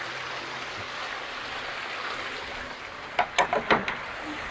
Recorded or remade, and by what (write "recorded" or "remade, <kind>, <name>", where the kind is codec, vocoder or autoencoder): recorded